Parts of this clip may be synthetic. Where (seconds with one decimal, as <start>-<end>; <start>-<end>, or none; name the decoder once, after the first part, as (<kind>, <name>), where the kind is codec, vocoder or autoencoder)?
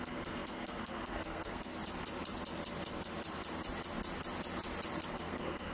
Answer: 0.0-1.7 (codec, SNAC); 5.1-5.7